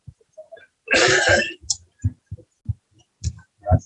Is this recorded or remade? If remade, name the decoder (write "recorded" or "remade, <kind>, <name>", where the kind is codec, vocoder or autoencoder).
recorded